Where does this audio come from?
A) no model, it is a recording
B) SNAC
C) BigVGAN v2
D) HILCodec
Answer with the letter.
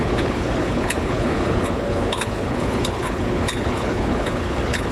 D